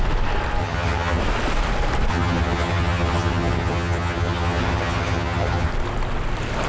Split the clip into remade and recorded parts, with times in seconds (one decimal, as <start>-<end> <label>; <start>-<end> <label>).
0.0-0.6 recorded; 0.6-1.2 remade; 1.2-2.1 recorded; 2.1-5.7 remade; 5.7-6.7 recorded